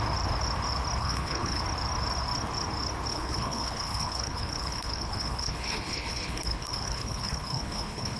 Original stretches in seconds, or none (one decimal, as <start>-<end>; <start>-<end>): 0.0-1.0; 1.6-3.1